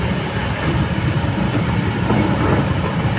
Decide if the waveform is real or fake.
fake